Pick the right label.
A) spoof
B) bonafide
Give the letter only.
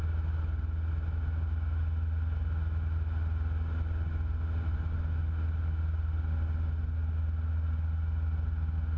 B